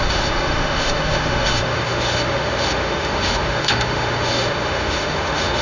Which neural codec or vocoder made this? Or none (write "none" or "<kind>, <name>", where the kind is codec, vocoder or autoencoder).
autoencoder, DAC-VAE